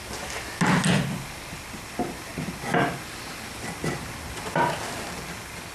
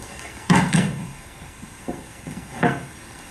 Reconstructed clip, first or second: second